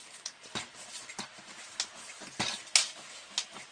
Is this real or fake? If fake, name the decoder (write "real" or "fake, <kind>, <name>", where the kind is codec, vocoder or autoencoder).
real